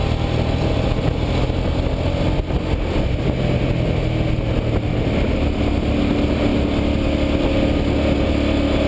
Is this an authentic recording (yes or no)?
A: yes